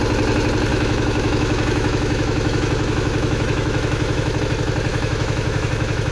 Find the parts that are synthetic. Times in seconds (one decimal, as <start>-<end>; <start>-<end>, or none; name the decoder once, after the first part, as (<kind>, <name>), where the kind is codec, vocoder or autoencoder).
0.7-4.4 (autoencoder, DAC-VAE); 4.9-6.1